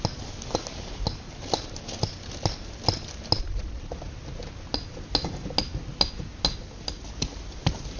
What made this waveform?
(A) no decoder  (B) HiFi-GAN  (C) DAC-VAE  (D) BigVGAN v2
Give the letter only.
A